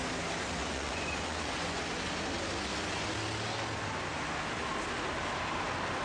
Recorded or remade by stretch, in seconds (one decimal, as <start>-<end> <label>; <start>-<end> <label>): 0.0-0.6 recorded; 0.6-1.8 remade; 1.8-6.0 recorded

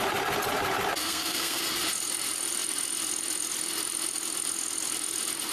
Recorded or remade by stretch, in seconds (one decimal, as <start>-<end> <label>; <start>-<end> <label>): 0.0-1.0 recorded; 1.0-1.6 remade; 1.6-5.5 recorded